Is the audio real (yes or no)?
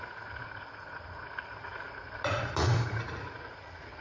no